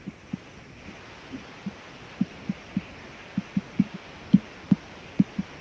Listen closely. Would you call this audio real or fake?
real